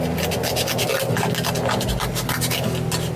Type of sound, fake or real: real